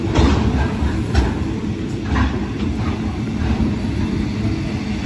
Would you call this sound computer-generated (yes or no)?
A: yes